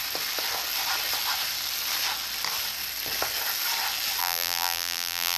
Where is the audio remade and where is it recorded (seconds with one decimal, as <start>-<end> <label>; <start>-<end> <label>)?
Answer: 0.0-4.2 recorded; 4.2-5.4 remade